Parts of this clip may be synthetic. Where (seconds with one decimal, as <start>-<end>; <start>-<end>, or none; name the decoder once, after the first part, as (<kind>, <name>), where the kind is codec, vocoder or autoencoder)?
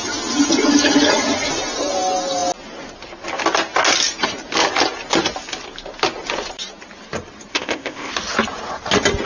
7.5-8.1 (codec, ZipCodec)